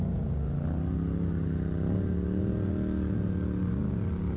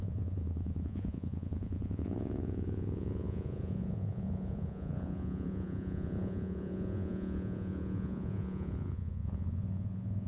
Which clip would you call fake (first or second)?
second